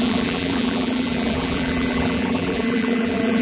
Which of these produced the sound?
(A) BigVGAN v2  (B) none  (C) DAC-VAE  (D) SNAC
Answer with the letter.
A